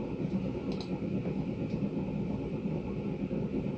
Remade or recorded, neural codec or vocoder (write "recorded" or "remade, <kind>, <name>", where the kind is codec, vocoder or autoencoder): recorded